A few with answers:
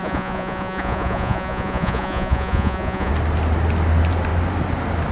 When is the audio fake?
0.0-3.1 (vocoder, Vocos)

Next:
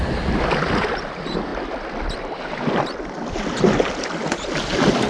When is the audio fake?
none

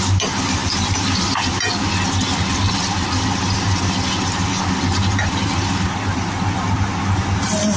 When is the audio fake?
none

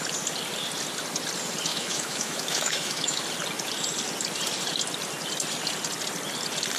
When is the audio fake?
1.7-3.2 (autoencoder, DAC-VAE)

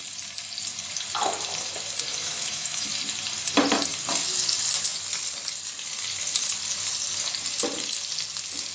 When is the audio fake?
2.1-2.9 (autoencoder, DAC-VAE)

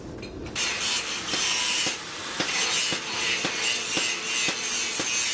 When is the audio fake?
0.4-2.6 (vocoder, BigVGAN v2)

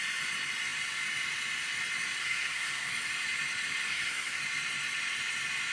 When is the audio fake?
2.2-2.9 (codec, SNAC); 3.9-4.4